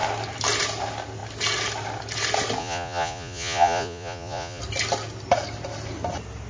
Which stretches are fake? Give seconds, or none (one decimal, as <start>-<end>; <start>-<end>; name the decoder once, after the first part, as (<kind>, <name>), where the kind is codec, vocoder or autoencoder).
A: 2.6-4.6 (vocoder, Vocos)